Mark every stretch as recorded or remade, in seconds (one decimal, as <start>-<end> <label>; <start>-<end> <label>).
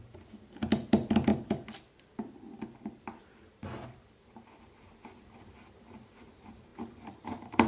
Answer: 0.0-6.7 recorded; 6.7-7.7 remade